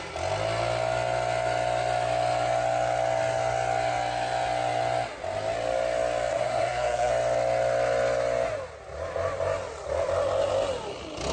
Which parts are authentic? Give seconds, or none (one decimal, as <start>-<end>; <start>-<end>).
0.0-6.3; 7.1-11.3